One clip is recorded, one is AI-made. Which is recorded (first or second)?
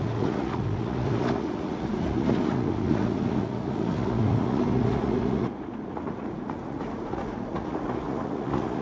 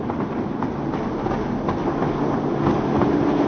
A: second